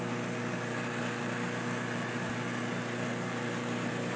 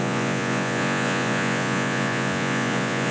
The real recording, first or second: first